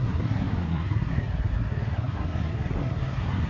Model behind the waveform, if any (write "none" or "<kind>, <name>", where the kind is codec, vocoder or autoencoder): codec, SNAC